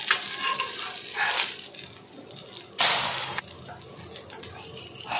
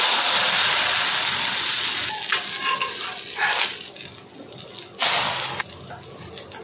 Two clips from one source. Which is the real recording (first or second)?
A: second